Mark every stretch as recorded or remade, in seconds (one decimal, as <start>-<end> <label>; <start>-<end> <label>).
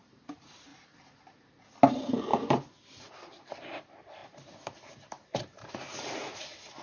0.0-0.7 remade; 0.7-1.9 recorded; 1.9-6.8 remade